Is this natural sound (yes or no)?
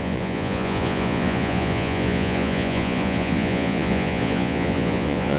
no